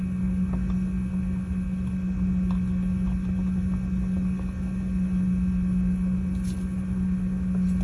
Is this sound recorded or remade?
recorded